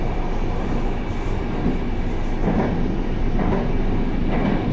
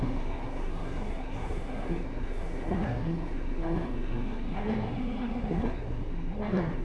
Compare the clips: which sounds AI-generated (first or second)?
second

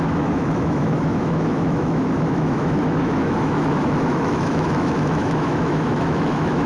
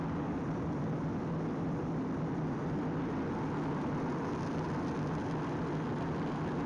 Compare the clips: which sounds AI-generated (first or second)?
first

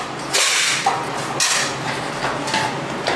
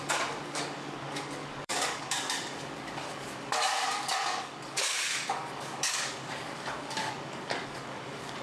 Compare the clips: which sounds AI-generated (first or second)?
second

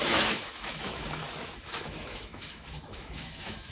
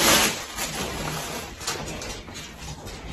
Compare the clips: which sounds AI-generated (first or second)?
first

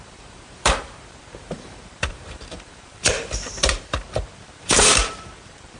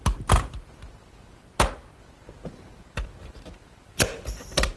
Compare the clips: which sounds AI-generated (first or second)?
first